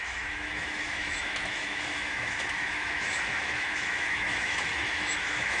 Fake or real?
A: fake